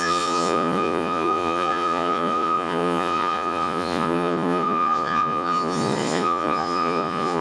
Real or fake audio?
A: fake